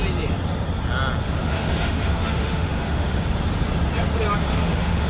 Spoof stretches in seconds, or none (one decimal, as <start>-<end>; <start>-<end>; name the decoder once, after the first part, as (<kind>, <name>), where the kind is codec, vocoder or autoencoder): 1.2-3.2 (autoencoder, DAC-VAE); 4.5-5.1